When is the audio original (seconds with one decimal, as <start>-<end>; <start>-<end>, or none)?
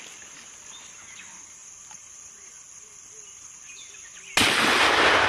0.0-5.3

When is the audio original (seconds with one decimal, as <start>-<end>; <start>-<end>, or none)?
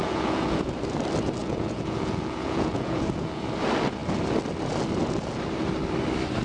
0.7-1.4; 3.4-6.4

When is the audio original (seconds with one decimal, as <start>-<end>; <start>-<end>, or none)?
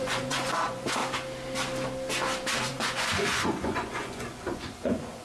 1.0-2.6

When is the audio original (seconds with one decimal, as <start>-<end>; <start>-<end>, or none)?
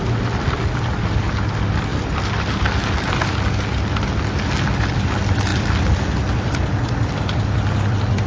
0.0-8.3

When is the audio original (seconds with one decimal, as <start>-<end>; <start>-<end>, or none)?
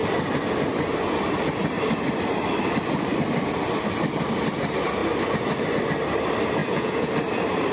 0.0-6.6; 7.1-7.7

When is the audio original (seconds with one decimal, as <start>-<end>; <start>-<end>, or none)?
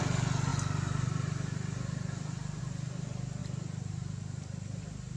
0.0-5.2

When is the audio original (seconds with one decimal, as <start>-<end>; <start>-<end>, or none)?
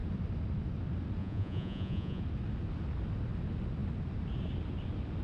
0.0-1.2; 2.2-5.2